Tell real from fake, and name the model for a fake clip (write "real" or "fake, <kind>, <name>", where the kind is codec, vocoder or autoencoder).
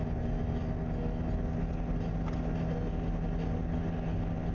real